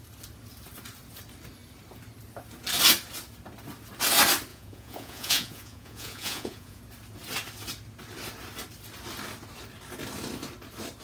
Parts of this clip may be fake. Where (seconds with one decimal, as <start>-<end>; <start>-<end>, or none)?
4.5-6.8